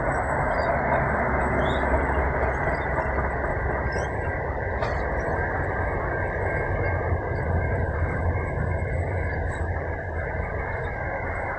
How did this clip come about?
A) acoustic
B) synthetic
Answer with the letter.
A